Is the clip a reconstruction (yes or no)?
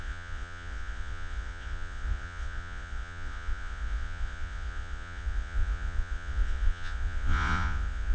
yes